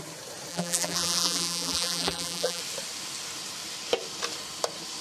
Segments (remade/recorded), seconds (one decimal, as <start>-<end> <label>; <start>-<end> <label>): 0.0-0.5 recorded; 0.5-2.6 remade; 2.6-5.0 recorded